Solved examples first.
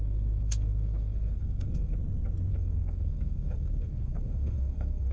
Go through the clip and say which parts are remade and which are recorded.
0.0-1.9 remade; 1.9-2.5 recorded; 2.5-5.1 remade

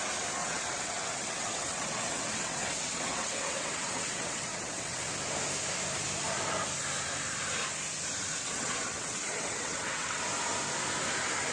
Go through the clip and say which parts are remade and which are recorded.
0.0-0.4 recorded; 0.4-5.1 remade; 5.1-8.3 recorded; 8.3-10.2 remade; 10.2-11.5 recorded

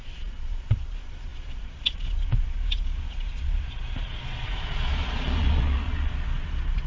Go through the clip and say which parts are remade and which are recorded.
0.0-6.9 remade

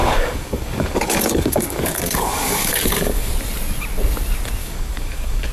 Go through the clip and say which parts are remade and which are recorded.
0.0-3.3 remade; 3.3-4.6 recorded; 4.6-5.5 remade

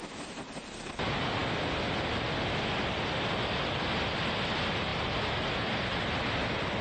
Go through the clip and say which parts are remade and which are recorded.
0.0-6.8 recorded

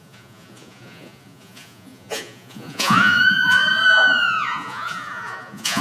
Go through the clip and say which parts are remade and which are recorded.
0.0-5.8 remade